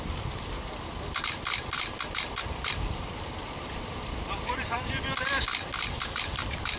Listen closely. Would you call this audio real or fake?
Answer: fake